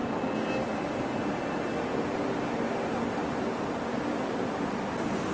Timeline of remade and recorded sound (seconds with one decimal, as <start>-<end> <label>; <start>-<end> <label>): 0.0-3.2 recorded; 3.2-4.5 remade; 4.5-5.3 recorded